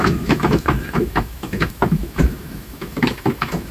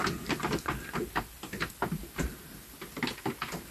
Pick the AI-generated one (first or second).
first